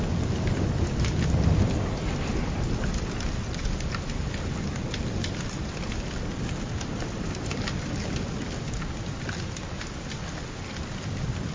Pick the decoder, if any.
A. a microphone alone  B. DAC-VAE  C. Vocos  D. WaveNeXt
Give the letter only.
A